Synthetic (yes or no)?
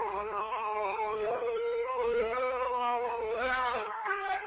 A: yes